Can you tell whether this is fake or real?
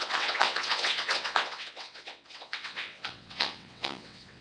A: fake